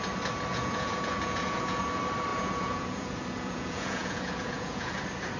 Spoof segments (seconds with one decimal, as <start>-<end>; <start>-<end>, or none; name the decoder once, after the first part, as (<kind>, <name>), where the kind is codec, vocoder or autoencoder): 0.5-1.8 (vocoder, Vocos); 2.3-4.9